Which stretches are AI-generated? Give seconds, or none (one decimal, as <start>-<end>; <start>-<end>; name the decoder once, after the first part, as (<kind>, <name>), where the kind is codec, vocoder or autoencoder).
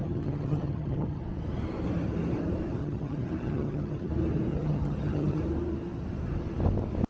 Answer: 0.0-1.2 (vocoder, HiFi-GAN); 2.8-4.1; 4.5-5.4